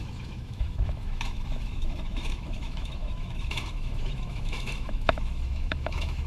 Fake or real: fake